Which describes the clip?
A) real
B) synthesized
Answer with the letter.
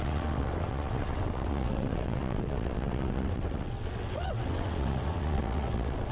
B